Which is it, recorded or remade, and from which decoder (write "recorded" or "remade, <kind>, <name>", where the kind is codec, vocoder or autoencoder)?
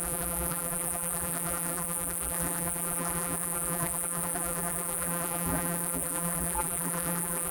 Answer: remade, vocoder, BigVGAN v2